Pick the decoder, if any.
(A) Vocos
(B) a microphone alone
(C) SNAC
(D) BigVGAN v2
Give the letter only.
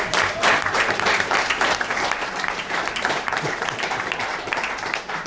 D